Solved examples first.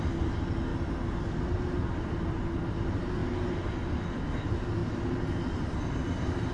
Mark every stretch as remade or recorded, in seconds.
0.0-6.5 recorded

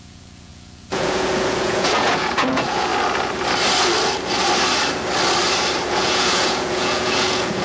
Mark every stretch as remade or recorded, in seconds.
0.0-2.9 remade; 2.9-5.9 recorded; 5.9-7.6 remade

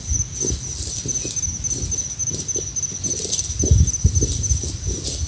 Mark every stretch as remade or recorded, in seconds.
0.0-5.3 recorded

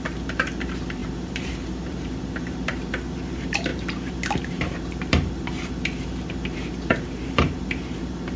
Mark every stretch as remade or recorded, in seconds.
0.0-8.4 remade